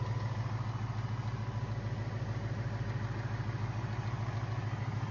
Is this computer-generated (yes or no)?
no